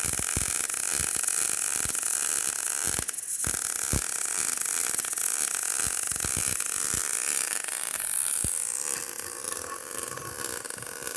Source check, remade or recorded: recorded